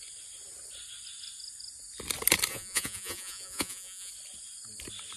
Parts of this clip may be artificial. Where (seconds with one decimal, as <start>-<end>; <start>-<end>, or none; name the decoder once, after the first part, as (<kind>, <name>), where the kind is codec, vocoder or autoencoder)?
2.5-4.1 (vocoder, Vocos)